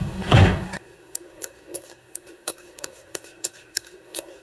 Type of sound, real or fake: fake